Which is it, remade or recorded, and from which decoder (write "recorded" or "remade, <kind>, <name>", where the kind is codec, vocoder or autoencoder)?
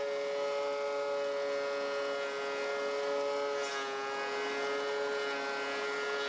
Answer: recorded